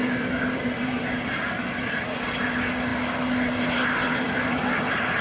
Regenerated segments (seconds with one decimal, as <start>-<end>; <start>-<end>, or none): 0.0-0.6